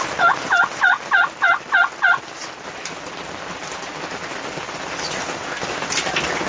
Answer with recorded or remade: recorded